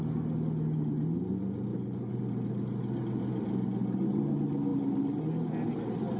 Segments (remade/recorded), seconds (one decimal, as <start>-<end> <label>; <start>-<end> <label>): 0.0-1.7 recorded; 1.7-2.2 remade; 2.2-6.2 recorded